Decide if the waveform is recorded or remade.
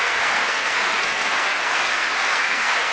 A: remade